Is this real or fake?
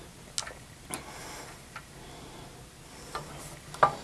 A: real